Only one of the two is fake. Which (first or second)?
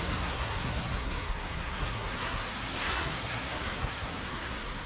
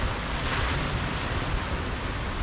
first